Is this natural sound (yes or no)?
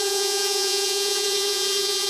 no